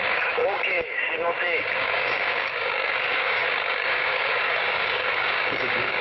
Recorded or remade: remade